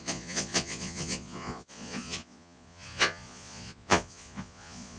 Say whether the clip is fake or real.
fake